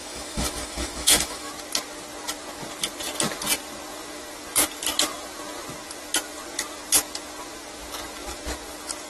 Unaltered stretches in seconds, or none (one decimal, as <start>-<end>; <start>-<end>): 1.5-9.1